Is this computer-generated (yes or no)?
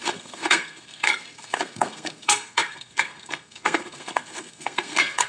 yes